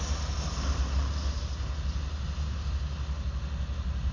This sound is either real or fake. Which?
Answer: real